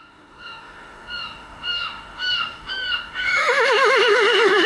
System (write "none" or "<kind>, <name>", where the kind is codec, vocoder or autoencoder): autoencoder, DAC-VAE